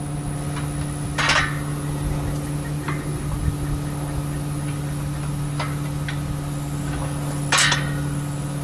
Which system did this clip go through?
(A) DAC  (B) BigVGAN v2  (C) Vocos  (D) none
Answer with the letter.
D